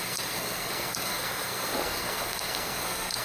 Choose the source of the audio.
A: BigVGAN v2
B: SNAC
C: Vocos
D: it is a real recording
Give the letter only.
B